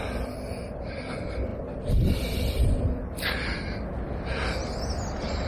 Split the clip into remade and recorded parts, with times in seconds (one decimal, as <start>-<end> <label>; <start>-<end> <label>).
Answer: 0.0-5.5 recorded